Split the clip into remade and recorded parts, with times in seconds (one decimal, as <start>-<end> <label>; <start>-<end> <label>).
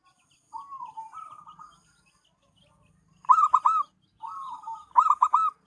0.0-5.7 recorded